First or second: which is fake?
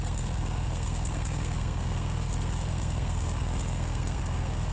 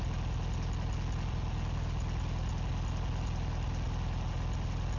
first